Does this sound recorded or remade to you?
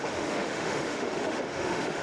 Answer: remade